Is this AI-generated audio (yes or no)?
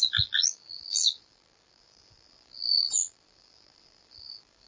yes